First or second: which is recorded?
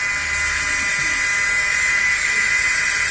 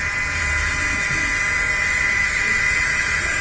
first